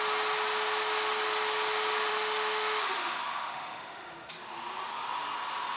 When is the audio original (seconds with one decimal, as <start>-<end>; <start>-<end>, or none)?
0.0-2.1; 4.3-5.8